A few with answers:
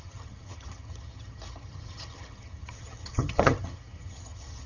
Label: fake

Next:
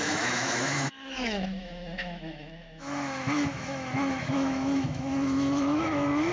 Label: fake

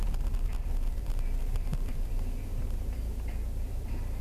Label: fake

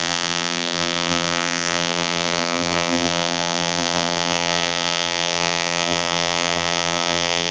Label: fake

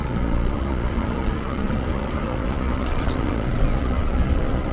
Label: fake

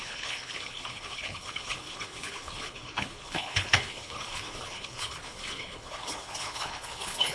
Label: fake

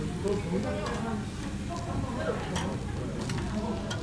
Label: real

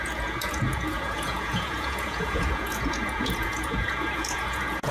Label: fake